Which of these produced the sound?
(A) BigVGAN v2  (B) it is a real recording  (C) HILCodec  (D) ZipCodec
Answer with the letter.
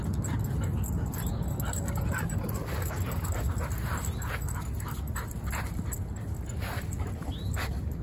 B